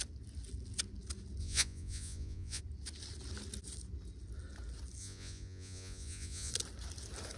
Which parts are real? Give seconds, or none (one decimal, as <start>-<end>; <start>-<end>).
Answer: 0.0-1.4; 2.6-5.0; 6.5-7.4